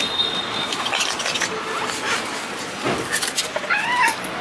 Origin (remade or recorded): recorded